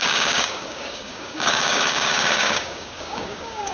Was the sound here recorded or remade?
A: remade